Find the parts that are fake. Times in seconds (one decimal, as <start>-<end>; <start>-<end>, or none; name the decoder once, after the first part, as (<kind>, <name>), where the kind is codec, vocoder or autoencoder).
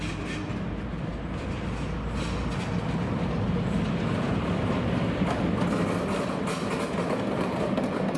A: none